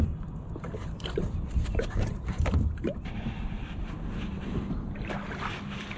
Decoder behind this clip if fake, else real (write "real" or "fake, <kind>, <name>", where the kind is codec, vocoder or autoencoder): real